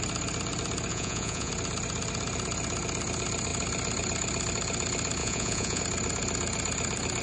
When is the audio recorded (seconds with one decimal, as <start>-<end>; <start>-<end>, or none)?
0.0-0.9; 1.5-5.2; 5.8-7.2